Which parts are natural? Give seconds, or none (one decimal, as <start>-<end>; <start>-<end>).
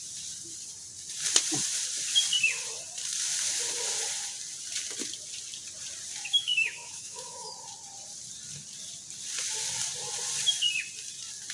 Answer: 0.0-6.3; 7.5-11.5